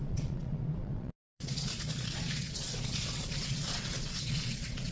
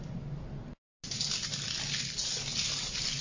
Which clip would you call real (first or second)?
second